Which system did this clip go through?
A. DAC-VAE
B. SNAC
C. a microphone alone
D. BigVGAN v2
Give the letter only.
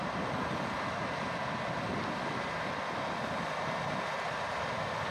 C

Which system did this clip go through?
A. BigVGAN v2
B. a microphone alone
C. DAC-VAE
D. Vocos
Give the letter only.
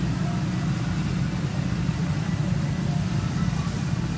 B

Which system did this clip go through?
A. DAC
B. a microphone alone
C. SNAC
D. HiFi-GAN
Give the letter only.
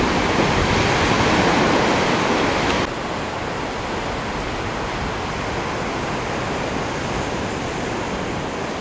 B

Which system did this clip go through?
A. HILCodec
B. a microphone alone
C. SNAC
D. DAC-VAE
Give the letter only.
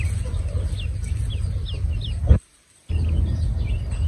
B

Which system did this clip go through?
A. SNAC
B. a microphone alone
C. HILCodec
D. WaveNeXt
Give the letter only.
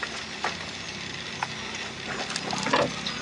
B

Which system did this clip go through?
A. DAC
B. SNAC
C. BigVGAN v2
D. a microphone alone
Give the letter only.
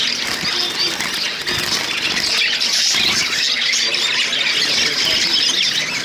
D